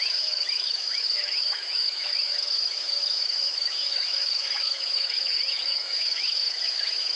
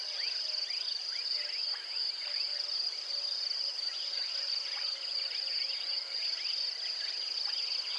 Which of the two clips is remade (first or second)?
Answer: first